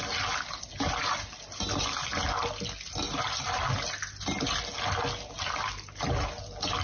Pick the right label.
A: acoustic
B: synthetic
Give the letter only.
A